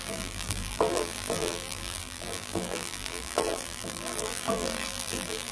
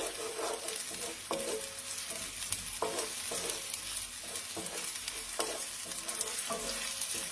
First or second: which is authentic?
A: second